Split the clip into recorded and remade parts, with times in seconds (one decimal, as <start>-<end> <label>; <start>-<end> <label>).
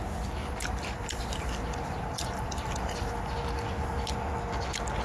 0.0-0.4 recorded; 0.4-3.1 remade; 3.1-5.0 recorded